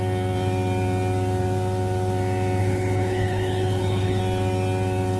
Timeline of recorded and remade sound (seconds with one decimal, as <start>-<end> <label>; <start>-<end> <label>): 0.0-2.6 recorded; 2.6-4.2 remade; 4.2-5.2 recorded